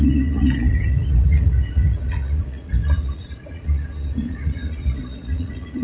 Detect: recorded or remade remade